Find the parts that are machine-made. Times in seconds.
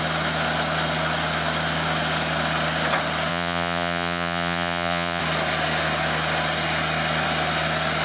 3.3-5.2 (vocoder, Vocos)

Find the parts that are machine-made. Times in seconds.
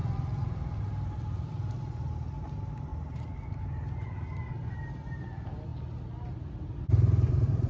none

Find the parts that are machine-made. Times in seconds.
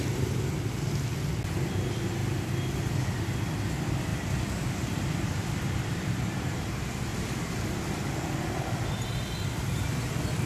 4.1-6.6 (vocoder, BigVGAN v2); 7.1-10.5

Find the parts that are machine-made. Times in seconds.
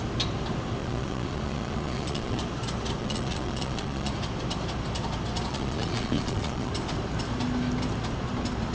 0.8-2.4 (vocoder, Vocos); 3.0-4.1; 5.5-6.7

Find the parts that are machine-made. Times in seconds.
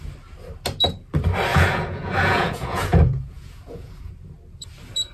1.5-4.1 (vocoder, Vocos)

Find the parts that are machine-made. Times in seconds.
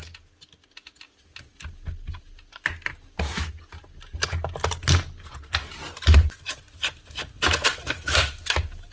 none